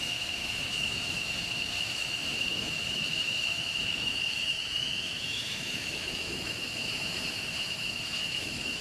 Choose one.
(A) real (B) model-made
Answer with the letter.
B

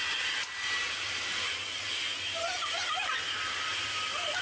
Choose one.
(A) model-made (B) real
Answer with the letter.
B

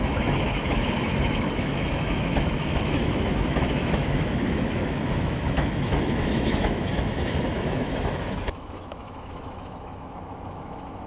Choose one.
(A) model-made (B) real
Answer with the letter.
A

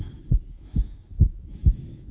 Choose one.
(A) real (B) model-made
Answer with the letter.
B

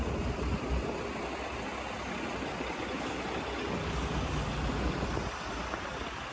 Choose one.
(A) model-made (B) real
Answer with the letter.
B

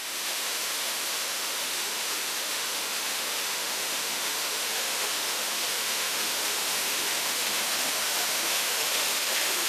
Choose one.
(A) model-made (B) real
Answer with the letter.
A